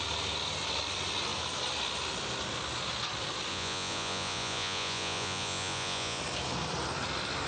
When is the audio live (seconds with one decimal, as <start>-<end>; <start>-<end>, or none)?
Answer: 0.0-3.5; 6.2-7.5